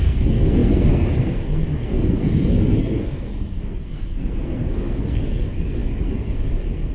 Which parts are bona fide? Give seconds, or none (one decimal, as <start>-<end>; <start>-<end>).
none